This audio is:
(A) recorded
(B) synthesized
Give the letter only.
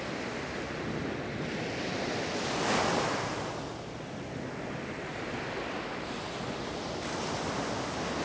A